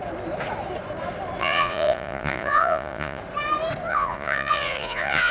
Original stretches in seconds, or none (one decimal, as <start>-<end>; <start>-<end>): 0.0-1.4; 3.2-3.9